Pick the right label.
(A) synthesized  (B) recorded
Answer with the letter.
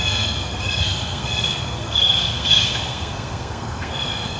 A